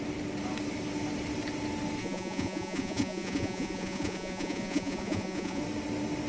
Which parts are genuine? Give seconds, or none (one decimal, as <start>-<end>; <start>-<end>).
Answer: 0.0-2.0; 5.6-6.3